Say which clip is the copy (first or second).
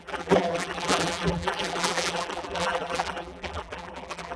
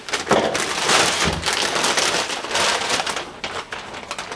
first